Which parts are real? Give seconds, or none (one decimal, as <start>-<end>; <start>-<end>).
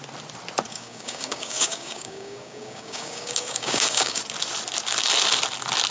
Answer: 0.0-0.7; 4.2-5.9